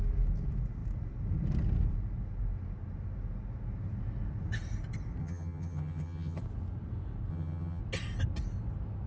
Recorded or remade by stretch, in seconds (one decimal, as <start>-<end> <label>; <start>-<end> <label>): 0.0-5.2 recorded; 5.2-6.4 remade; 6.4-7.3 recorded; 7.3-7.8 remade; 7.8-9.1 recorded